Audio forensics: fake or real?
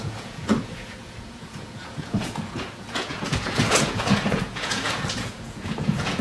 fake